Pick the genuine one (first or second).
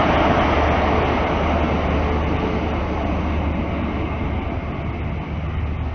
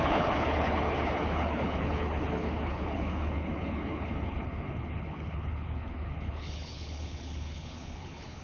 first